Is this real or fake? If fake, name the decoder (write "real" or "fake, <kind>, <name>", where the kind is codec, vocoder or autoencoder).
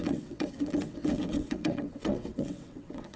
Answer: fake, vocoder, WaveNeXt